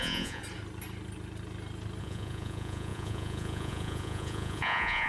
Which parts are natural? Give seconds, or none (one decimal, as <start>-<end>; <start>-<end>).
0.4-2.0